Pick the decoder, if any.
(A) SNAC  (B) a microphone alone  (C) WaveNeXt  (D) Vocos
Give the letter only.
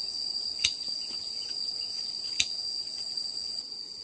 B